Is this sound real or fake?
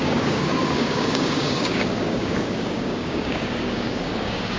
fake